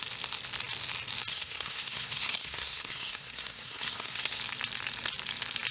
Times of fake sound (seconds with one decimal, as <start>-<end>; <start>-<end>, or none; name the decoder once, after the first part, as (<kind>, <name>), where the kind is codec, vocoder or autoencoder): 1.3-4.4 (codec, SNAC)